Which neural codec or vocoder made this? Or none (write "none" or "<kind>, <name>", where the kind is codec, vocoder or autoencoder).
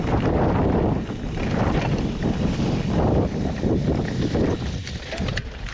none